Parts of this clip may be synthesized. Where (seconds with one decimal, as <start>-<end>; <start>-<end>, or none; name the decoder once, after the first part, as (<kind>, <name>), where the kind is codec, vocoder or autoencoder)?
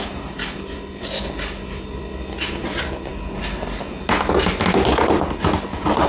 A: none